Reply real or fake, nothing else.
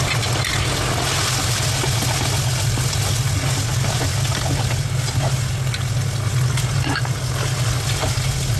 real